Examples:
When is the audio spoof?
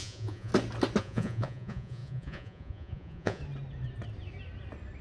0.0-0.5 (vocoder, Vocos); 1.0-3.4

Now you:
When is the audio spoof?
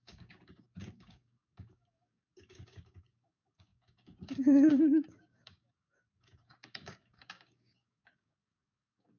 0.0-9.2 (codec, DAC)